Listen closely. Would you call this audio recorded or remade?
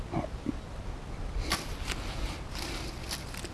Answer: recorded